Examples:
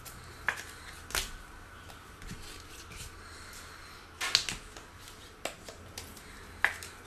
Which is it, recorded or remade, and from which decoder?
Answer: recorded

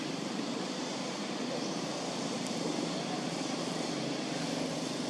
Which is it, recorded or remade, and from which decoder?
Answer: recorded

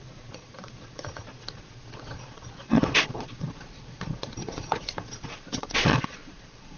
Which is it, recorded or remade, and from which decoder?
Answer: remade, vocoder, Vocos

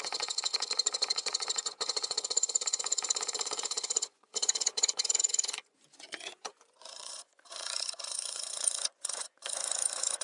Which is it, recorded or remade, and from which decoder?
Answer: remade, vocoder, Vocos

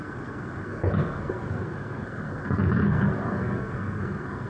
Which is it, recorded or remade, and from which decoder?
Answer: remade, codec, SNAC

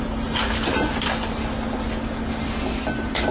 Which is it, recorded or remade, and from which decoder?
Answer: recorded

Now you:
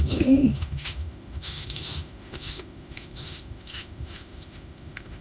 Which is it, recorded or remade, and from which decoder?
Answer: remade, autoencoder, DAC-VAE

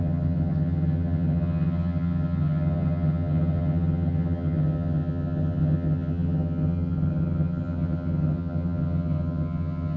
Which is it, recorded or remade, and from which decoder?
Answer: remade, vocoder, HiFi-GAN